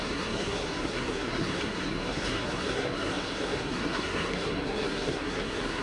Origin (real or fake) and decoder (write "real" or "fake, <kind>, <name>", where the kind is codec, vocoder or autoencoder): fake, codec, SNAC